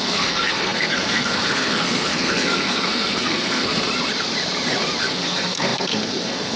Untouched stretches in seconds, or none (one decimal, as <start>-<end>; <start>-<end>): 3.9-5.0